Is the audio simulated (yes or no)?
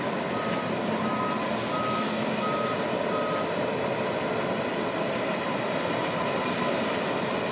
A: no